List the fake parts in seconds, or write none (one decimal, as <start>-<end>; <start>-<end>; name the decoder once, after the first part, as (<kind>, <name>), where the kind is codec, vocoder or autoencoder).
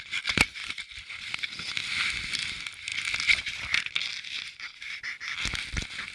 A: none